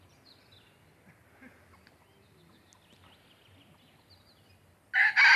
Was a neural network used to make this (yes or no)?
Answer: no